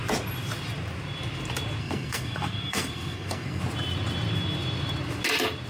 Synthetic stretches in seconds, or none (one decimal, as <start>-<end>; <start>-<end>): 1.8-3.6